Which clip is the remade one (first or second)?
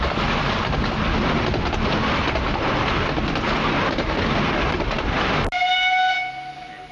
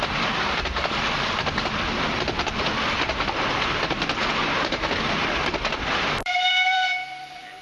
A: second